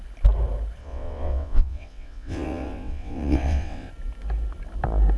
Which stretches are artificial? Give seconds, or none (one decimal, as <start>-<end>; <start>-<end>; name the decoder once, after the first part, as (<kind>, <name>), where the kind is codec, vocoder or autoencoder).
0.8-3.9 (vocoder, WaveNeXt)